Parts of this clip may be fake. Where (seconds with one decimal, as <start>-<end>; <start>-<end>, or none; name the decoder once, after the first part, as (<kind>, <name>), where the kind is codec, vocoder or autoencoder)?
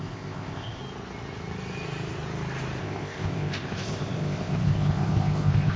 0.0-0.8 (codec, ZipCodec); 2.8-5.8